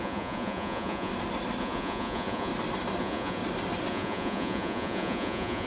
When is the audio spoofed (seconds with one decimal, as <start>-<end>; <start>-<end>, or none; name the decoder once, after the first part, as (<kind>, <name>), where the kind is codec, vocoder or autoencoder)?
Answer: 0.0-1.1 (vocoder, Vocos); 1.6-2.5; 3.0-3.4; 3.9-5.7